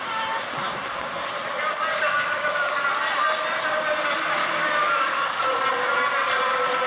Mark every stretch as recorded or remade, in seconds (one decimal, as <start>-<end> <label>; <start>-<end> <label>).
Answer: 0.0-1.9 recorded; 1.9-2.7 remade; 2.7-4.4 recorded; 4.4-5.4 remade; 5.4-6.9 recorded